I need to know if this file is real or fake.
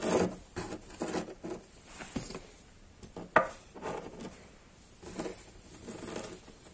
real